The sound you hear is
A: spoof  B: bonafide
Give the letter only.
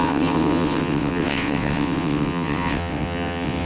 A